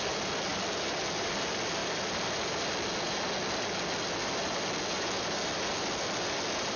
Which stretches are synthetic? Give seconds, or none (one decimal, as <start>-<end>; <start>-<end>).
none